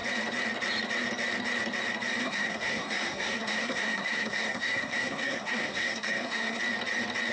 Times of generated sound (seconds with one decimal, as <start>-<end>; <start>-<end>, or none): 2.2-6.6